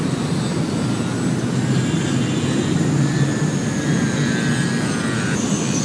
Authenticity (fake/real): real